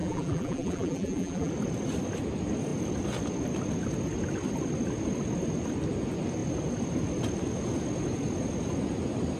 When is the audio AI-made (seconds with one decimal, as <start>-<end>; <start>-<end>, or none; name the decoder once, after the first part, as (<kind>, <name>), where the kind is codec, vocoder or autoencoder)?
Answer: 0.0-1.5 (vocoder, BigVGAN v2)